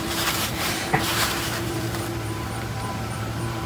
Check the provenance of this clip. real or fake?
fake